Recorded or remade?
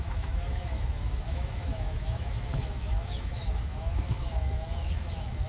remade